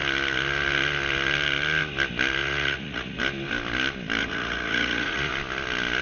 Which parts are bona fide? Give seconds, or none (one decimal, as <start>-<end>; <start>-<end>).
0.0-2.4; 3.2-4.2; 5.3-6.0